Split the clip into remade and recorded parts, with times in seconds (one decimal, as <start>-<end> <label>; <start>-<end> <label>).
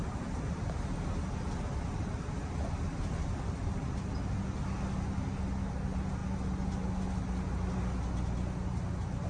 0.0-9.3 recorded